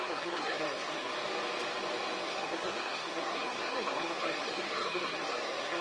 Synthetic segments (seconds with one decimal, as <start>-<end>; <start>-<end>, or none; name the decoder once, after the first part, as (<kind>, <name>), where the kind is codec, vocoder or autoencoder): 0.0-1.1 (codec, SNAC); 2.2-5.8